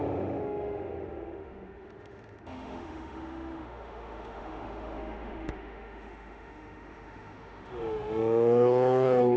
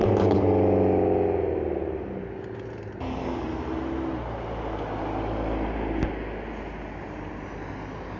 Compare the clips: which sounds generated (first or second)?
first